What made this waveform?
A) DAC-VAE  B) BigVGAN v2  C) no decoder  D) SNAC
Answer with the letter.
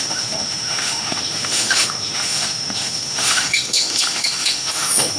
A